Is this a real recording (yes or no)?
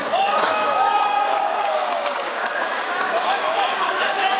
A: no